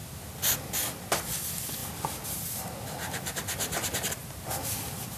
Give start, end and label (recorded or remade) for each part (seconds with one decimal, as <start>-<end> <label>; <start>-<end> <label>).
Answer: 0.0-5.2 recorded